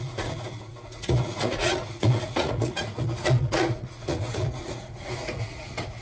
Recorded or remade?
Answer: remade